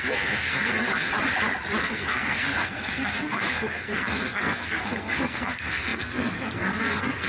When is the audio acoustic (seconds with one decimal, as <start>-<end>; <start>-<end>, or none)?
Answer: 1.1-1.8